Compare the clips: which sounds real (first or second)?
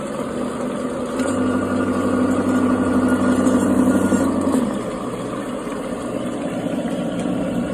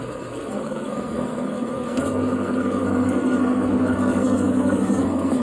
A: first